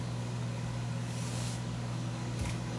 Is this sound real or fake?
fake